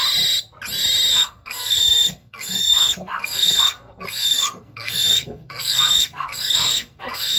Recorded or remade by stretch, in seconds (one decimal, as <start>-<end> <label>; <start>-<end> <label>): 0.0-1.1 recorded; 1.1-7.4 remade